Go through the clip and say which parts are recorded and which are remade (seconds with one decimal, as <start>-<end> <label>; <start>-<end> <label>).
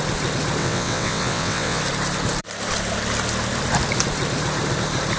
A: 0.0-0.6 recorded; 0.6-1.8 remade; 1.8-5.2 recorded